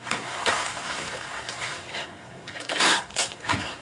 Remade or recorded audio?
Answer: remade